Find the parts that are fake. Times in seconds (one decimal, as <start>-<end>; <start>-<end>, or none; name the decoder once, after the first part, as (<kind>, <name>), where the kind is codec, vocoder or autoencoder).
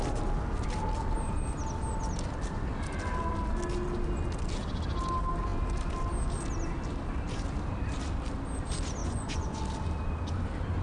9.0-9.6 (vocoder, Vocos)